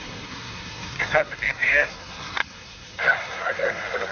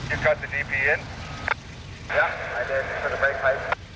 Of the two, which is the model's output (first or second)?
first